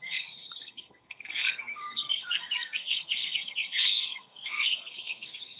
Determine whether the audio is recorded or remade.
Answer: remade